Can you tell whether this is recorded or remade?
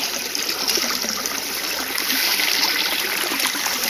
recorded